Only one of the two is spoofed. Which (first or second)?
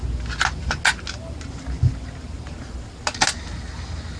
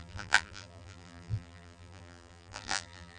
second